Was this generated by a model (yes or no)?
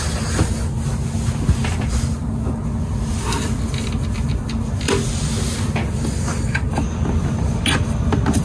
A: no